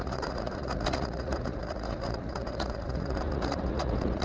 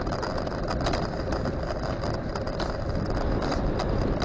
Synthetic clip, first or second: first